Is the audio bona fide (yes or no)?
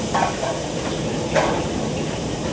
yes